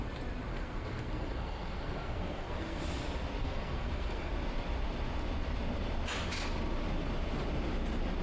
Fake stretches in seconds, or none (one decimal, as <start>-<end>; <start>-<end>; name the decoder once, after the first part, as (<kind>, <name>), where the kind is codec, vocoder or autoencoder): 0.5-2.8 (codec, SNAC); 3.4-4.3